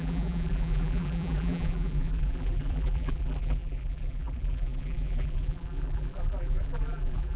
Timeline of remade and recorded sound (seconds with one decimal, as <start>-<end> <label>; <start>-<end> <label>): 0.0-7.4 remade

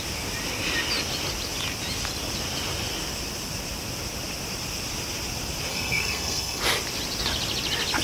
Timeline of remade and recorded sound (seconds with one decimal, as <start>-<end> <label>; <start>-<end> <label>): 0.0-5.7 recorded; 5.7-6.6 remade; 6.6-8.0 recorded

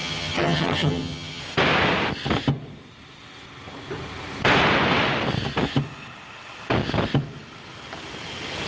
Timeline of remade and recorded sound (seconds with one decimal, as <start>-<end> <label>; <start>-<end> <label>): 0.0-1.4 remade; 1.4-8.7 recorded

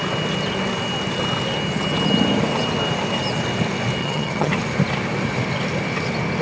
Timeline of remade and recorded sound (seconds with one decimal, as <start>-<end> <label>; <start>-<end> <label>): 0.0-4.0 recorded; 4.0-4.5 remade; 4.5-6.4 recorded

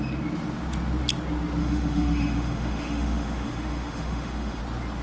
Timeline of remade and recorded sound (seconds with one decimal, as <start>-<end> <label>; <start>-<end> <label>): 0.0-1.6 recorded; 1.6-4.6 remade; 4.6-5.0 recorded

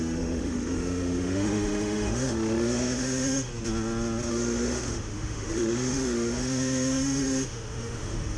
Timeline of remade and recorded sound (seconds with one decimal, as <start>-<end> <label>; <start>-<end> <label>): 0.0-3.5 remade; 3.5-4.3 recorded; 4.3-8.4 remade

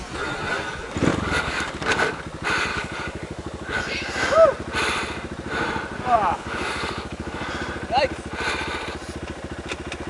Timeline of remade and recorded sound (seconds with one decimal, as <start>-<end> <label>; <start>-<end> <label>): 0.0-1.1 recorded; 1.1-2.2 remade; 2.2-2.7 recorded; 2.7-3.8 remade; 3.8-6.3 recorded; 6.3-7.5 remade; 7.5-10.1 recorded